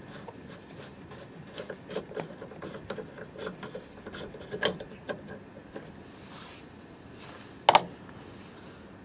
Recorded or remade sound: recorded